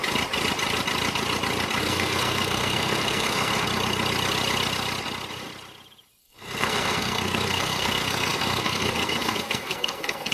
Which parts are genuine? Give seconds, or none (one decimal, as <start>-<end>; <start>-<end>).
0.0-1.8; 3.5-6.2